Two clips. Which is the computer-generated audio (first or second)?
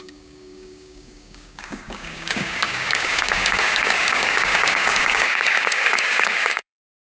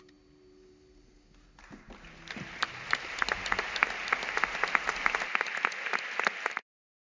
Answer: first